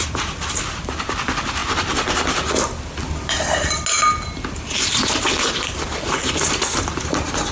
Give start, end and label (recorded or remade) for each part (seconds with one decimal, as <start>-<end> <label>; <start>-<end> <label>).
0.0-1.6 remade; 1.6-5.5 recorded; 5.5-6.2 remade; 6.2-6.8 recorded; 6.8-7.5 remade